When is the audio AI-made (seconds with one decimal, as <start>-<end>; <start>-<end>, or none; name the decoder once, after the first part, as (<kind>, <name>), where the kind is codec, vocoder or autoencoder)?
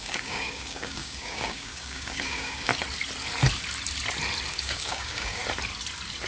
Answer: 0.0-2.7 (codec, DAC); 4.5-5.4